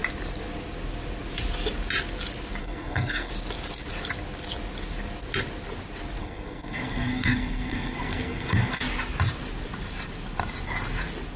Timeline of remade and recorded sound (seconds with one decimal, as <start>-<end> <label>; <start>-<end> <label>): 0.0-2.6 recorded; 2.6-3.3 remade; 3.3-6.2 recorded; 6.2-8.8 remade; 8.8-11.4 recorded